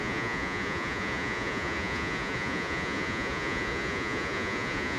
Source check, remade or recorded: remade